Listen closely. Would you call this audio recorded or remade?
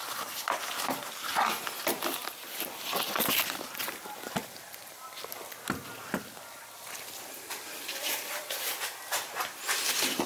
remade